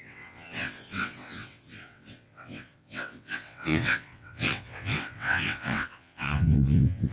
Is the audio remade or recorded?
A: remade